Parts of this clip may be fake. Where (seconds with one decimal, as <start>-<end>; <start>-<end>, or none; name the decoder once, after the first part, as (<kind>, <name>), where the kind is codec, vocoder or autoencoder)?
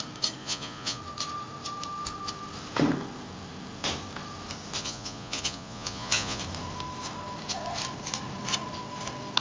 0.4-1.0 (vocoder, Vocos); 4.8-6.4